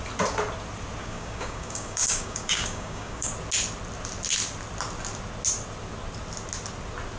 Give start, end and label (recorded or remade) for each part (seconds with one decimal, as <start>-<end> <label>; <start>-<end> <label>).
0.0-1.0 recorded; 1.0-3.3 remade; 3.3-7.2 recorded